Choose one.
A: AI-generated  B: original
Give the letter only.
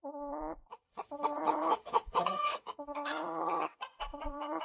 A